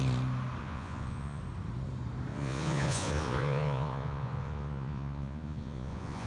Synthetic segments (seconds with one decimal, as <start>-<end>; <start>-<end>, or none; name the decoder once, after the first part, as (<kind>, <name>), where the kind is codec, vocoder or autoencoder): 0.6-1.4 (vocoder, Vocos); 2.3-6.3